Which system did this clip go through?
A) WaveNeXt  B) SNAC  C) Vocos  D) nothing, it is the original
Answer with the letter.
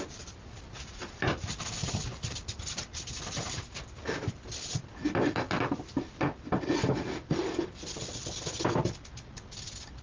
D